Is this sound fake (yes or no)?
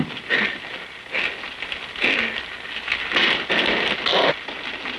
no